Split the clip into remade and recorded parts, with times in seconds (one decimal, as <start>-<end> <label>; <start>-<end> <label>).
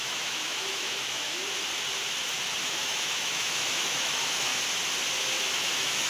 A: 0.0-1.4 remade; 1.4-2.6 recorded; 2.6-4.5 remade; 4.5-5.2 recorded; 5.2-6.1 remade